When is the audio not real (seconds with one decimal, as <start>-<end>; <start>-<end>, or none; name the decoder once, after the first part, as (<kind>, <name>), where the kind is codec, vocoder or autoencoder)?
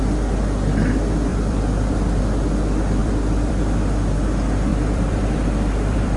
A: 1.3-2.2 (vocoder, BigVGAN v2); 3.0-3.6; 4.7-6.2